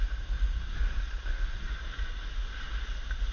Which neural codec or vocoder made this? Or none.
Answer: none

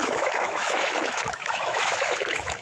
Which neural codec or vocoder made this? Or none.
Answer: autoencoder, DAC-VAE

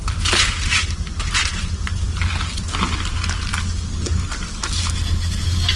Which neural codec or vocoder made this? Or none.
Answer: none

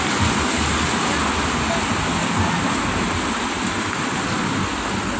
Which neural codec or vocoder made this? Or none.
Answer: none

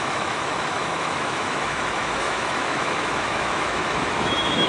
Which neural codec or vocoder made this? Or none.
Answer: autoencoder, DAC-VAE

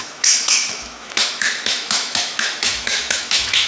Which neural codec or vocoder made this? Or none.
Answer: autoencoder, DAC-VAE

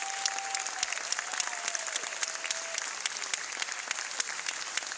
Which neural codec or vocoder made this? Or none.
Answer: none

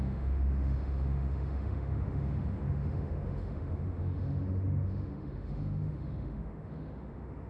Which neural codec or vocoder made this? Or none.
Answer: autoencoder, DAC-VAE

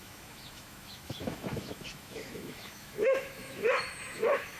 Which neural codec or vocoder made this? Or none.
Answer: autoencoder, DAC-VAE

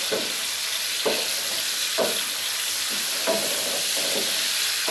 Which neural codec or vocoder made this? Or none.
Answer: none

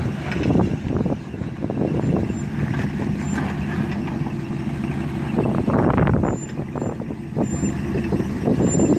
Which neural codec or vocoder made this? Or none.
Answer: none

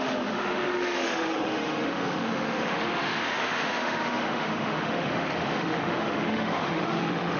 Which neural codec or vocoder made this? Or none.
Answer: autoencoder, DAC-VAE